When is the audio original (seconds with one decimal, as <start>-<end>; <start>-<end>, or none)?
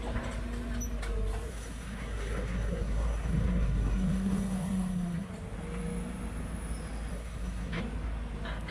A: 0.0-1.5; 5.3-7.1; 7.8-8.7